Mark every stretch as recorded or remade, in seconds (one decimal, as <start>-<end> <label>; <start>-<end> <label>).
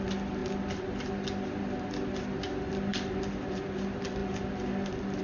0.0-5.2 recorded